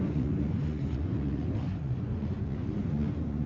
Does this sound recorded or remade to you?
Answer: remade